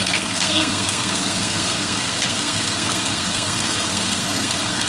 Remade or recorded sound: remade